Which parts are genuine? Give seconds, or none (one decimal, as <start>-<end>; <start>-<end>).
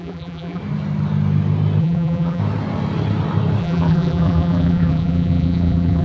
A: 0.6-1.8; 2.4-3.6